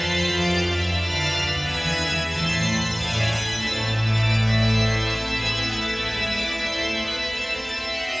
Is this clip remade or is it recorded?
recorded